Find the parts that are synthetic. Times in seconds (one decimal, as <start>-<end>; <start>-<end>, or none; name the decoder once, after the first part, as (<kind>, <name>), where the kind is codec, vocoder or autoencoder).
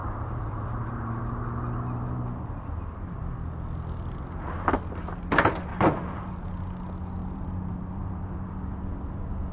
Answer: 0.0-1.4 (vocoder, BigVGAN v2); 5.7-6.5; 7.2-8.5